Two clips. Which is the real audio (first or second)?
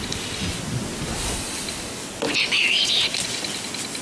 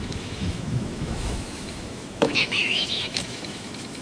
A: first